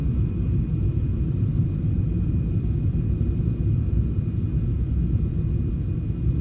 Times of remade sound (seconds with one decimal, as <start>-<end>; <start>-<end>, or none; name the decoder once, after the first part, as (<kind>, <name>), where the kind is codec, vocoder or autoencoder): 0.0-3.8 (vocoder, BigVGAN v2)